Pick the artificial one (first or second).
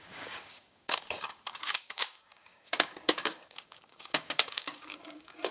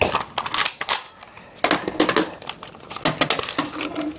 first